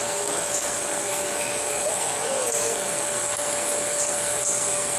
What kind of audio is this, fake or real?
fake